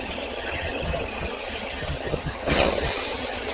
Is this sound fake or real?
fake